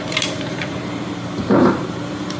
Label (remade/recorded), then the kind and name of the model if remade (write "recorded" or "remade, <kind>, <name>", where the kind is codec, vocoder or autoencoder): remade, vocoder, BigVGAN v2